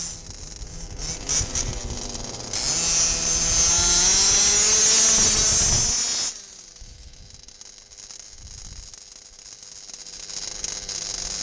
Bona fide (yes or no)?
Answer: yes